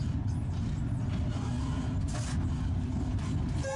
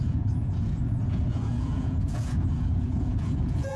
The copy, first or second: second